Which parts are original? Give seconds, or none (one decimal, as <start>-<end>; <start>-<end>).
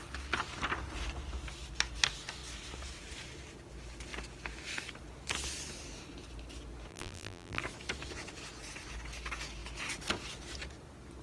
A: 0.0-6.9; 7.6-11.2